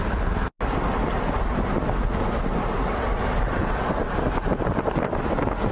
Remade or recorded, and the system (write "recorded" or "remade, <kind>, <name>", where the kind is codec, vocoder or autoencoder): recorded